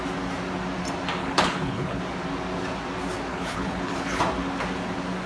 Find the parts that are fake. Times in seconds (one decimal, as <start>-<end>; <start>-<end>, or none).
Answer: 1.2-2.0; 3.3-4.2